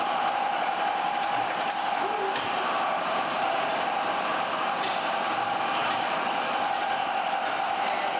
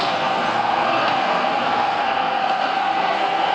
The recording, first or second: first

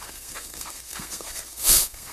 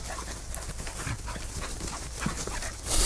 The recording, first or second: second